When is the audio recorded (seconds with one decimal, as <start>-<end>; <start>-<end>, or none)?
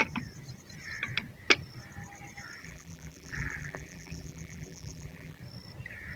0.0-2.6; 5.4-6.2